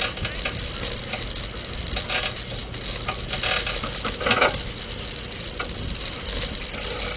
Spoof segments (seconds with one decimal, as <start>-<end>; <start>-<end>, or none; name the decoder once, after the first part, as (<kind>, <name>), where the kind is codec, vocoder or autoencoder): none